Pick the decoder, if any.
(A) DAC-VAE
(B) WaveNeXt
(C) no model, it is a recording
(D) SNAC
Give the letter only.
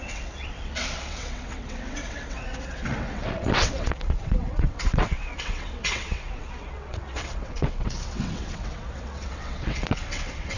B